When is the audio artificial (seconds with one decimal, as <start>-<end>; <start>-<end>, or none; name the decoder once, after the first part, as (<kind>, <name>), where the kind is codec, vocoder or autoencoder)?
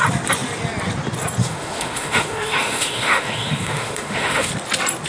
1.4-4.5 (autoencoder, DAC-VAE)